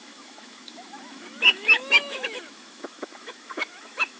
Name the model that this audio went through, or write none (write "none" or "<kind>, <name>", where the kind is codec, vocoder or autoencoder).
autoencoder, DAC-VAE